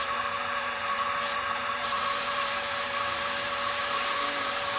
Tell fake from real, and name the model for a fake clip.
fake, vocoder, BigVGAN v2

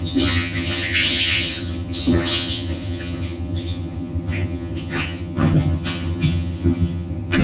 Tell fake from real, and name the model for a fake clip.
fake, vocoder, HiFi-GAN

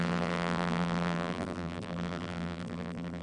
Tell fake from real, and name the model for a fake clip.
fake, vocoder, BigVGAN v2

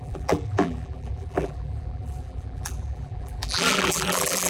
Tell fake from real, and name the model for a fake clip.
fake, vocoder, BigVGAN v2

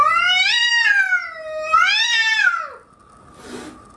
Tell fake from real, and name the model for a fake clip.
real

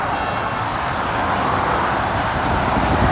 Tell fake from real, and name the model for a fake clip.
real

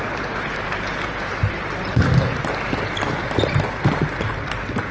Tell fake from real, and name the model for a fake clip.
real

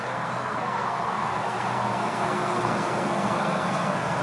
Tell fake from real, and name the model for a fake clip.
fake, codec, SNAC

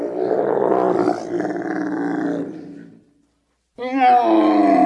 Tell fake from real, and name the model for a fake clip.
real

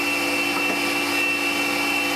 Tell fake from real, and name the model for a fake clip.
real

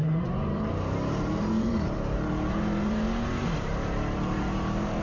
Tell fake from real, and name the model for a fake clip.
fake, vocoder, BigVGAN v2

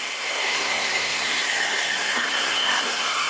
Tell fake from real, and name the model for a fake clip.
fake, codec, SNAC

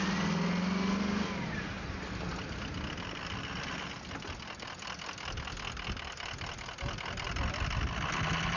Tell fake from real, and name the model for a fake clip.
real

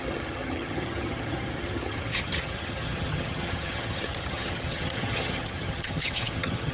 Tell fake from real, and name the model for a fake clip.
fake, vocoder, HiFi-GAN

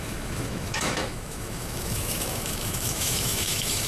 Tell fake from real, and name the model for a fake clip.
fake, autoencoder, DAC-VAE